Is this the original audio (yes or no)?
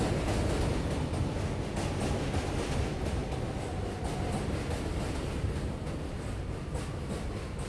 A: yes